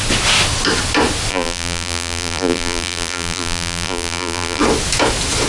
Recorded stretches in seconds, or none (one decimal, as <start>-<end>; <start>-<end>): 0.0-1.3; 4.6-5.5